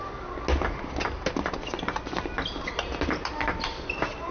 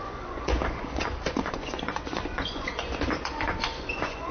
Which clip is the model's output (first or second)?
second